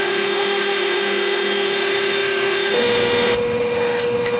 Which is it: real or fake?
fake